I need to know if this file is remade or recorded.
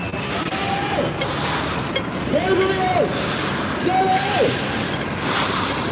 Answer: recorded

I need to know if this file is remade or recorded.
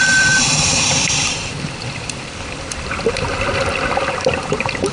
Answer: remade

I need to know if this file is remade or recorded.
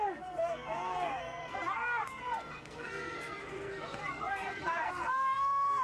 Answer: remade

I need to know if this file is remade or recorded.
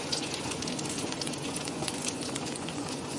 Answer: remade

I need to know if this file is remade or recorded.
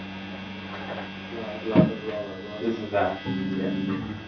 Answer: recorded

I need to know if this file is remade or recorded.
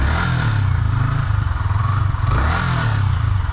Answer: recorded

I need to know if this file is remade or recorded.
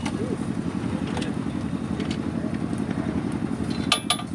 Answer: recorded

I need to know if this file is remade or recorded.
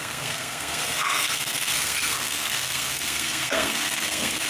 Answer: remade